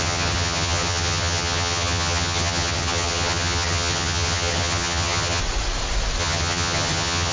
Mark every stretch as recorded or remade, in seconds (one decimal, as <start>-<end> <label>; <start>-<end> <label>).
0.0-5.4 remade; 5.4-6.2 recorded; 6.2-7.3 remade